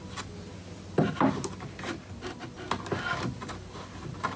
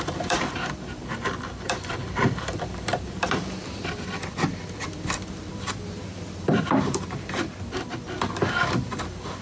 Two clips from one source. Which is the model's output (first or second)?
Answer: second